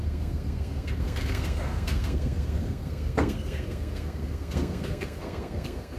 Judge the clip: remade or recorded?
remade